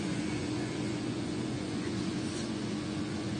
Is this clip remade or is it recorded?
remade